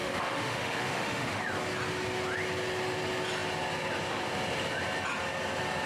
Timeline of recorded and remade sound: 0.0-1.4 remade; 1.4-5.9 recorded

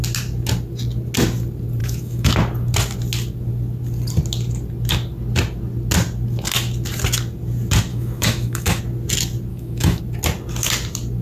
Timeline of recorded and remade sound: 0.0-1.8 recorded; 1.8-2.3 remade; 2.3-7.9 recorded; 7.9-8.8 remade; 8.8-9.5 recorded; 9.5-10.0 remade; 10.0-11.2 recorded